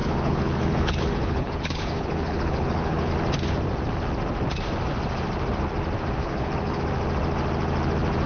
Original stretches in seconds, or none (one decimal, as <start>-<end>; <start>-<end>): 3.1-6.2; 6.8-8.3